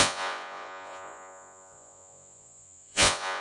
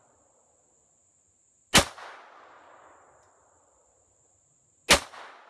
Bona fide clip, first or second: second